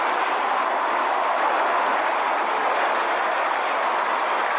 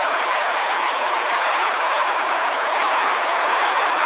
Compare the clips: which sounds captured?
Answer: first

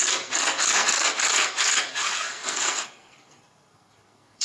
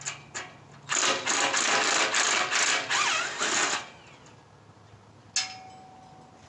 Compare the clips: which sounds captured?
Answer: second